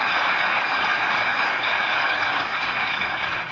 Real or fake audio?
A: fake